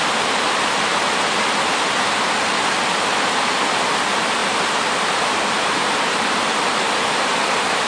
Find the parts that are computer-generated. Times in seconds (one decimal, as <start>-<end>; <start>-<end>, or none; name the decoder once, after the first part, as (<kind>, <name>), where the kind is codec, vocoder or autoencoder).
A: 4.4-7.3 (vocoder, BigVGAN v2)

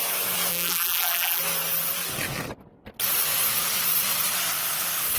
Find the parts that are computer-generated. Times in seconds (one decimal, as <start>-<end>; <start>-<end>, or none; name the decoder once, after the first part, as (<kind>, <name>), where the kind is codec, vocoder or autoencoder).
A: 0.5-1.4 (vocoder, BigVGAN v2)

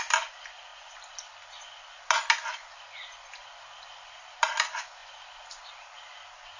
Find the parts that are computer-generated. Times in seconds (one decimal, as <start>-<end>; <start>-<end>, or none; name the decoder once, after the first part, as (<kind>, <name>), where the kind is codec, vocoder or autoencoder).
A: 0.0-0.7 (vocoder, BigVGAN v2); 4.2-6.6

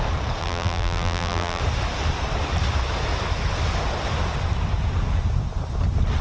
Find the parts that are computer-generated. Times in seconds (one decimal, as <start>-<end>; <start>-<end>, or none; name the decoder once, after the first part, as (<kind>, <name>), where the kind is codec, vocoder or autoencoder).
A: 0.4-1.6 (vocoder, BigVGAN v2)

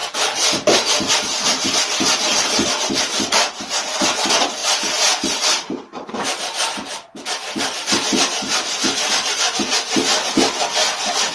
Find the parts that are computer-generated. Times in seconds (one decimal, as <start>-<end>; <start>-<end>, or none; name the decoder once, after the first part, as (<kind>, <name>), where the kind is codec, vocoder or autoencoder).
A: 0.0-0.9 (vocoder, BigVGAN v2); 4.6-6.3; 7.8-9.8

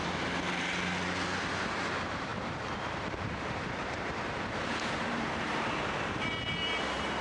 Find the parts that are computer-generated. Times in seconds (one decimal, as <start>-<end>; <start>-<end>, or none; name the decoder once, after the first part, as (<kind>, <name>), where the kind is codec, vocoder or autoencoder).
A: 1.4-7.2 (vocoder, BigVGAN v2)

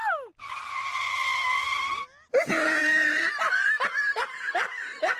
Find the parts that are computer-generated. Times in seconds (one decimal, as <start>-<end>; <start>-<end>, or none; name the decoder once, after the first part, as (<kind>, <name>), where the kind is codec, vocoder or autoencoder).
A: 2.8-4.3 (vocoder, BigVGAN v2)